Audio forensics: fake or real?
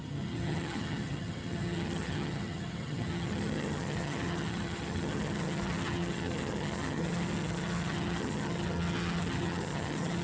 fake